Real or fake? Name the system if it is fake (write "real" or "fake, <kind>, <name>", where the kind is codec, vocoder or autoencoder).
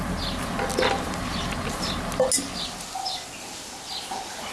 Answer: real